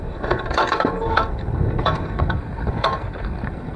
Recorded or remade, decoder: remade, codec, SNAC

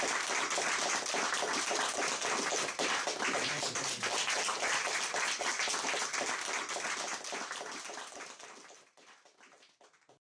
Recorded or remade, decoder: recorded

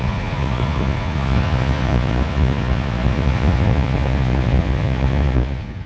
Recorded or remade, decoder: remade, vocoder, Vocos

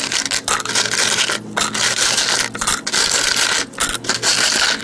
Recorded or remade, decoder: recorded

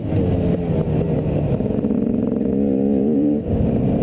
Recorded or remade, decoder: recorded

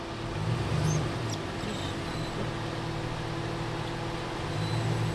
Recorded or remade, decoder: recorded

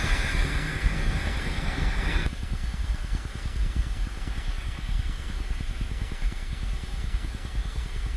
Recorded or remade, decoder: remade, codec, SNAC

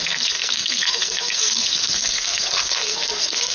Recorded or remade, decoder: remade, codec, SNAC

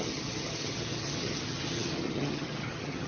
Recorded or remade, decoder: remade, vocoder, HiFi-GAN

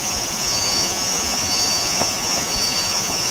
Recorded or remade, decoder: remade, vocoder, Vocos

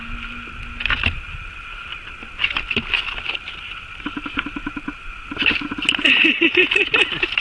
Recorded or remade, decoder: recorded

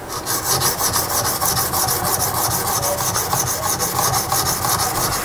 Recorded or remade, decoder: recorded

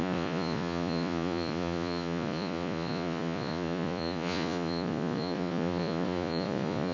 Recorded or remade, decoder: remade, vocoder, Vocos